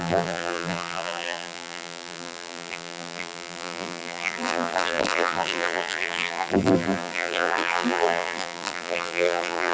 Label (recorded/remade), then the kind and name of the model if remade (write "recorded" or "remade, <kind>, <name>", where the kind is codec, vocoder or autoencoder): remade, vocoder, BigVGAN v2